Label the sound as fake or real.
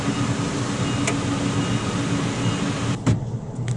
real